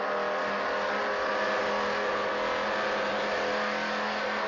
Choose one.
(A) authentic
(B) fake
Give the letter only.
A